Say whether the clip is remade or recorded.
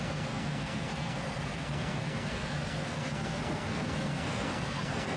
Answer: remade